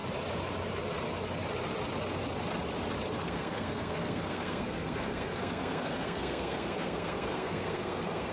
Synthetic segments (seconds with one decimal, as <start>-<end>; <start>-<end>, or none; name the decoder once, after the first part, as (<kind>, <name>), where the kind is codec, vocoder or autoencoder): 3.2-8.3 (codec, SNAC)